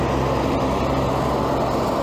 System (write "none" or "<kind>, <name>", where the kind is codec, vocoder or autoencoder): none